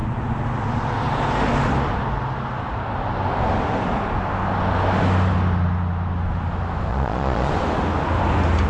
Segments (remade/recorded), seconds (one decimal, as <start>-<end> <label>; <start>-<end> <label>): 0.0-6.9 recorded; 6.9-7.5 remade; 7.5-8.7 recorded